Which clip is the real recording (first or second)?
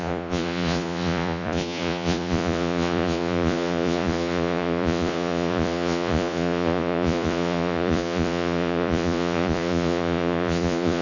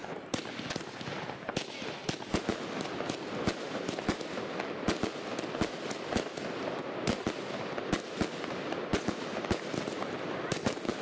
second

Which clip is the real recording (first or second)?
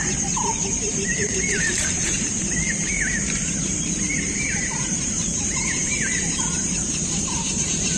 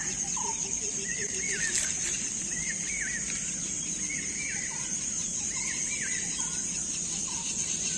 second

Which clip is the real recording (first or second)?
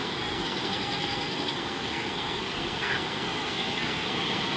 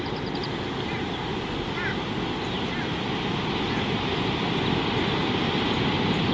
second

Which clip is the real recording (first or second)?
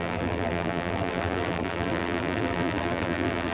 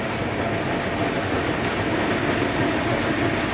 second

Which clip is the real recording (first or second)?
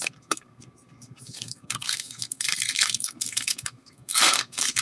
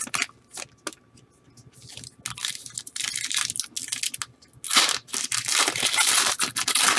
second